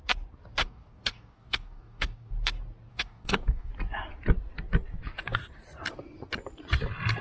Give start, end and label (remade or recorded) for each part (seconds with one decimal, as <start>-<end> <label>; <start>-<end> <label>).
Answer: 0.0-0.6 recorded; 0.6-2.3 remade; 2.3-2.9 recorded; 2.9-3.7 remade; 3.7-7.2 recorded